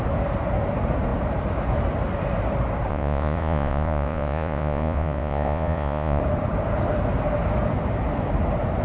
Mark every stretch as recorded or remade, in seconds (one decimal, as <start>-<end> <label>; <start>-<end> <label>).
0.0-2.9 recorded; 2.9-6.2 remade; 6.2-8.8 recorded